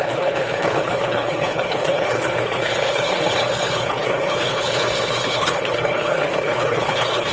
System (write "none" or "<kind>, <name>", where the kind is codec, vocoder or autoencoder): codec, HILCodec